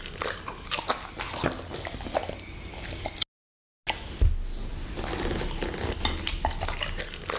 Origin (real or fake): real